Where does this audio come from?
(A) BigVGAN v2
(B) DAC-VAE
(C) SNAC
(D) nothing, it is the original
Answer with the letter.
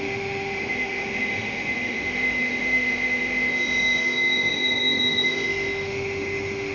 B